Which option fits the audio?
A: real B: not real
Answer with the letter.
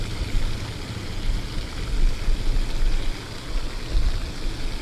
A